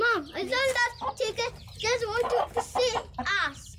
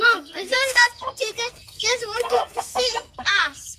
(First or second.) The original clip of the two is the first